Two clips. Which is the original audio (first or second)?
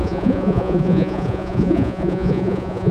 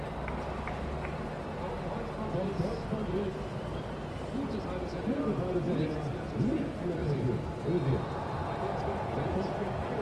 second